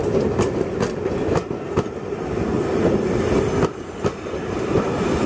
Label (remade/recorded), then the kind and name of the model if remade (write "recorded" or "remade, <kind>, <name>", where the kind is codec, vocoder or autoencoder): recorded